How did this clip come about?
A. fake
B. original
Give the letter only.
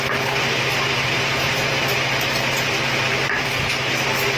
B